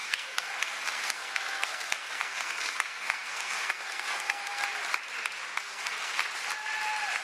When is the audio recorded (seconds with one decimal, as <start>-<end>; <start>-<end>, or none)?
4.6-5.6; 6.2-7.2